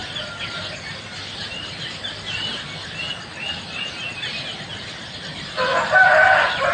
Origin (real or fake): real